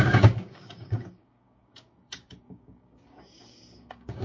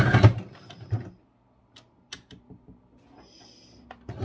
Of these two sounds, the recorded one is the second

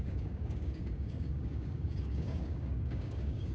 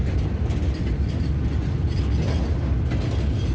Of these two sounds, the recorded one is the second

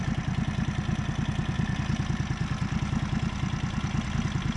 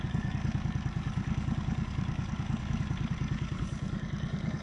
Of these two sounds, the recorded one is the first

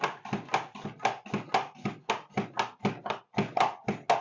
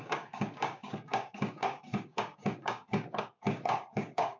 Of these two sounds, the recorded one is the first